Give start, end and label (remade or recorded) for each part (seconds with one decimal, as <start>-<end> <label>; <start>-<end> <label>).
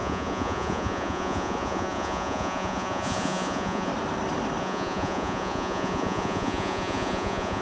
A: 0.0-3.9 remade; 3.9-4.6 recorded; 4.6-7.6 remade